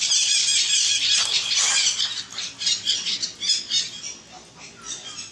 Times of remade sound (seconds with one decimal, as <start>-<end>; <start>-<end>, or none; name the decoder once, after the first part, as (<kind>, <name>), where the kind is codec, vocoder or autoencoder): none